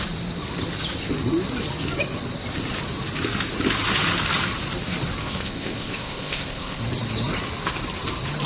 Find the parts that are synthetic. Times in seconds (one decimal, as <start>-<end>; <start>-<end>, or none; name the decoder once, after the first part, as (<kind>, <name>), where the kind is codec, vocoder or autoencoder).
5.2-6.8 (codec, ZipCodec)